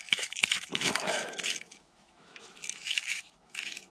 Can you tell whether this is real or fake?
fake